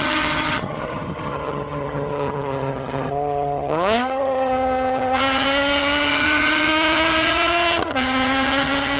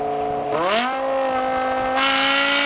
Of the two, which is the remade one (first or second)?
first